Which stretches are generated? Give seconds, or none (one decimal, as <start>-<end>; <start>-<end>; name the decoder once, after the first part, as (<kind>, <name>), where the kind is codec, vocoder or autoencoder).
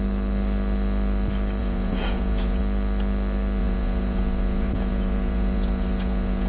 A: 1.6-2.6 (vocoder, Vocos); 3.6-6.5